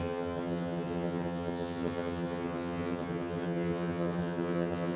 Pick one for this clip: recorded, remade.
remade